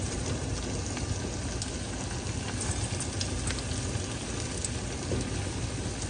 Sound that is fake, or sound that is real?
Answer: real